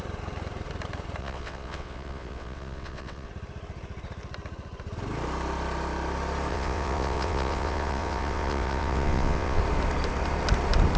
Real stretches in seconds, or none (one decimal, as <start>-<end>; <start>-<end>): 0.0-1.2; 3.3-6.5; 9.6-11.0